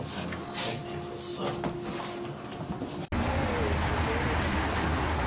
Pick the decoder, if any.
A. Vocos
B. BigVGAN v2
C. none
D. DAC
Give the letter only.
C